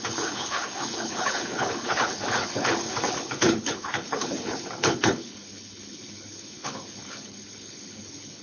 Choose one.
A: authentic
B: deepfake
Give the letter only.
B